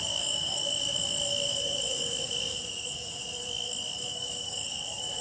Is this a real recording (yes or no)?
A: no